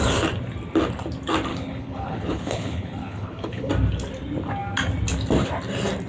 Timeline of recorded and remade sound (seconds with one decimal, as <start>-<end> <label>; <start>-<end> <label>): 0.0-1.5 recorded; 1.5-3.7 remade; 3.7-6.1 recorded

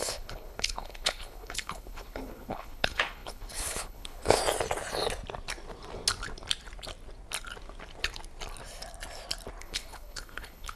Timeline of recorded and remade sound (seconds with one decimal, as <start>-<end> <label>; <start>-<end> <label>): 0.0-4.4 remade; 4.4-9.6 recorded; 9.6-10.8 remade

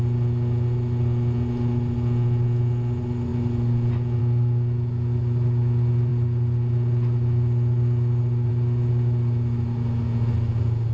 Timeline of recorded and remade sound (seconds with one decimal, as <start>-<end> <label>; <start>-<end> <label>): 0.0-10.9 recorded

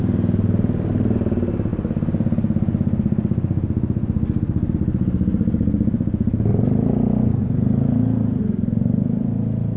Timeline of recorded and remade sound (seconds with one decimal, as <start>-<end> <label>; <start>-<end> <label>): 0.0-9.8 recorded